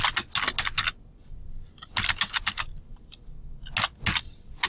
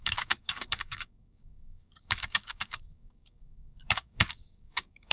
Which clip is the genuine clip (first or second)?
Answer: first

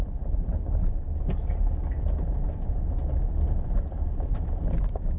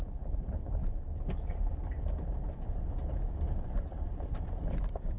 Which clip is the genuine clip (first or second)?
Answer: first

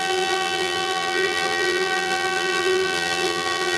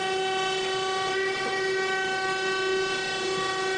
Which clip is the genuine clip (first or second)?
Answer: second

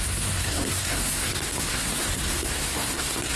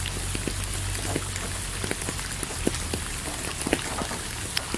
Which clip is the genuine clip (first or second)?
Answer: second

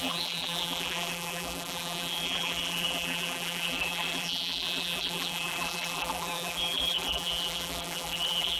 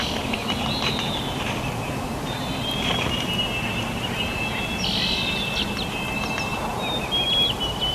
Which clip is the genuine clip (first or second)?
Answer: second